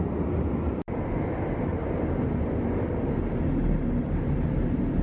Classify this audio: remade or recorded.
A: recorded